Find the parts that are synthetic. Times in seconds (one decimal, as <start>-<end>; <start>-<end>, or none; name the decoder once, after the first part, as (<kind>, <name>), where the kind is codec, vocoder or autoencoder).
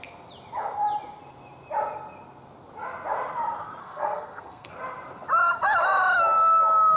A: 3.8-4.7 (codec, SNAC)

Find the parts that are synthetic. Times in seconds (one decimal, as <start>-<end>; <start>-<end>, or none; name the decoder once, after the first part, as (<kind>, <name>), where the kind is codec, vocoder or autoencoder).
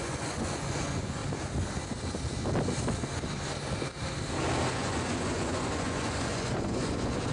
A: 0.0-1.2 (vocoder, Vocos); 4.7-7.3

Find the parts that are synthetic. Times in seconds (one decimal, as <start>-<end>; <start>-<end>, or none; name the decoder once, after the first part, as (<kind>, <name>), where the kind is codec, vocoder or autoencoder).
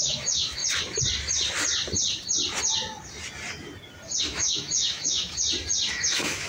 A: 0.0-0.6 (autoencoder, DAC-VAE); 4.2-5.4; 5.9-6.5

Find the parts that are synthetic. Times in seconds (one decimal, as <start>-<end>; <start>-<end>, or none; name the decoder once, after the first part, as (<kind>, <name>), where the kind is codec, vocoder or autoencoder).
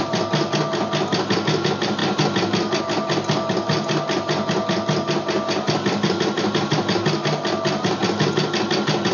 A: none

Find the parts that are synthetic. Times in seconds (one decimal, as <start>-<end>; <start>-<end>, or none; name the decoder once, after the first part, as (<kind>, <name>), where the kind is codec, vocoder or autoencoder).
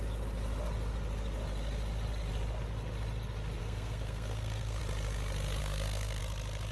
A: 3.6-4.8 (codec, SNAC); 5.6-6.2